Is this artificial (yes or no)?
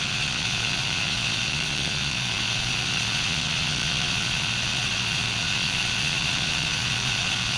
yes